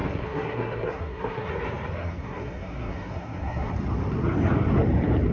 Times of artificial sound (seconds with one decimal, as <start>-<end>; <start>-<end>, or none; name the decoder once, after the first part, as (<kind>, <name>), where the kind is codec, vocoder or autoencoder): 0.0-1.5 (codec, SNAC); 2.0-3.7